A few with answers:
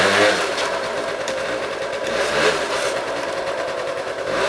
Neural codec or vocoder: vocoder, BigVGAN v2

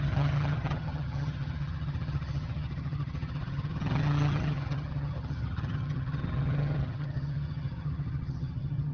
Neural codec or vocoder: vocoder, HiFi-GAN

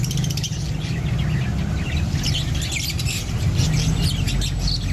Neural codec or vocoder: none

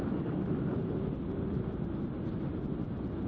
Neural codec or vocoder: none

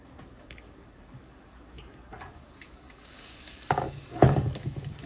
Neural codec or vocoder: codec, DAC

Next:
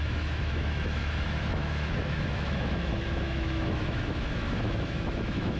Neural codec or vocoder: autoencoder, DAC-VAE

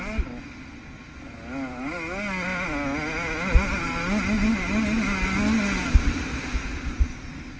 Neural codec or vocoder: none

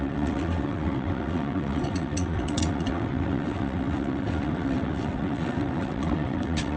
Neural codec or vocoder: vocoder, WaveNeXt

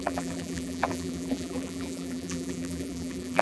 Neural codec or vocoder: vocoder, BigVGAN v2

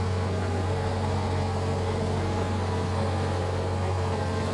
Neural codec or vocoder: codec, SNAC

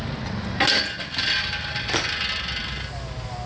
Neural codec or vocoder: none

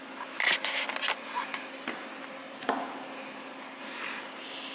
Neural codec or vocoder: none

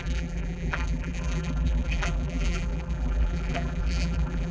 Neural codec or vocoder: vocoder, BigVGAN v2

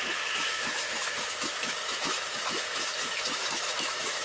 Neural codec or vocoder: autoencoder, DAC-VAE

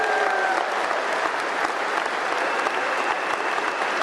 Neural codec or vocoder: none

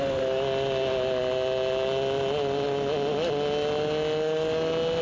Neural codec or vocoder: none